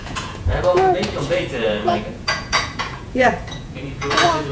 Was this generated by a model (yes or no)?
yes